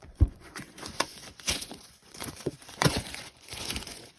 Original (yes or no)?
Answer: no